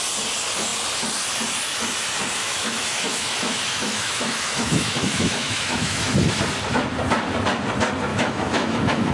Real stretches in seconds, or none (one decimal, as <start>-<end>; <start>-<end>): 0.0-2.4; 6.1-8.1